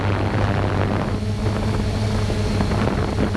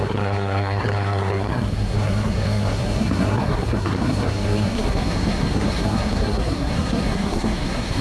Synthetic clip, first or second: second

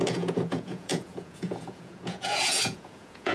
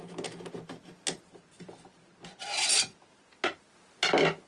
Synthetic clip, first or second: first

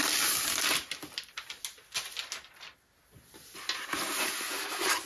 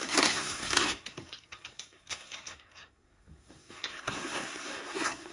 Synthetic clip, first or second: second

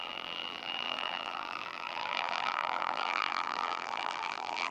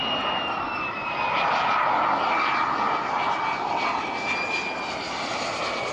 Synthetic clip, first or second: first